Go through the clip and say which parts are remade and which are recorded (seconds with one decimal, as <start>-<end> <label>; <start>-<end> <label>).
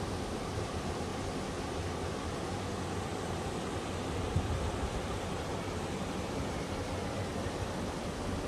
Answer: 0.0-8.5 recorded